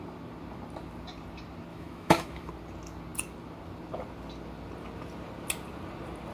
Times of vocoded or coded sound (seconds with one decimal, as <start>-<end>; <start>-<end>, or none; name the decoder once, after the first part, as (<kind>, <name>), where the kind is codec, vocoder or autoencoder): 1.7-2.5 (autoencoder, DAC-VAE)